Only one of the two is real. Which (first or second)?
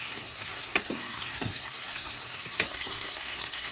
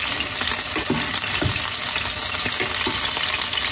second